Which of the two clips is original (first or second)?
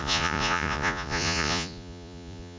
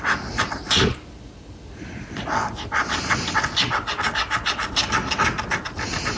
second